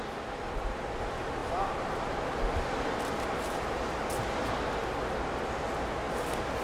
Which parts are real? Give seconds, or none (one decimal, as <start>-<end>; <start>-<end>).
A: 0.0-6.6